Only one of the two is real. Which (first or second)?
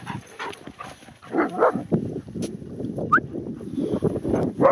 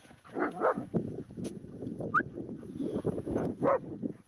first